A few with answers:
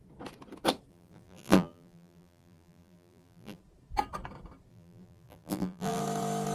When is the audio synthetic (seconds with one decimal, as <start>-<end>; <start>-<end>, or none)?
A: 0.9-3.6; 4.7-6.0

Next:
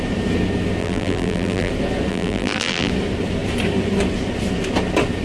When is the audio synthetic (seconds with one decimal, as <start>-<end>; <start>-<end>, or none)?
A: 0.8-1.7; 2.1-2.9

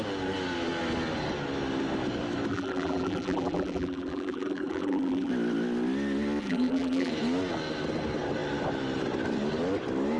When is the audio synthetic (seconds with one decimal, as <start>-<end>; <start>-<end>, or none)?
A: 2.5-5.3; 6.4-7.1

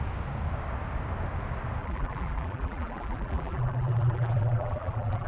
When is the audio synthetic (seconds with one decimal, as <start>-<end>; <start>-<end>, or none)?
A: 1.8-5.3

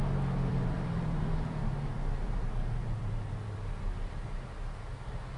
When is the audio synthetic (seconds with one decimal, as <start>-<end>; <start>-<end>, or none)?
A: 0.5-3.7

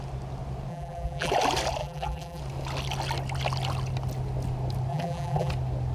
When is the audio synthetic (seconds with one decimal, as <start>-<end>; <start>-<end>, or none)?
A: 0.7-1.3; 1.8-2.4; 4.9-5.5